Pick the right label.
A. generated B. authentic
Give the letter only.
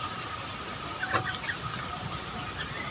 B